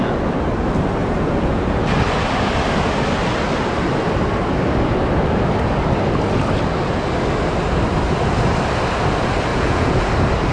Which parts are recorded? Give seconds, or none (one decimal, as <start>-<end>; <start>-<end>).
0.0-1.0; 1.8-9.5; 10.1-10.5